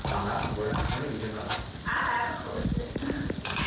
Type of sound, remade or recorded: recorded